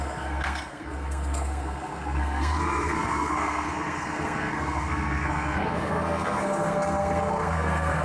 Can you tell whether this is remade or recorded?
remade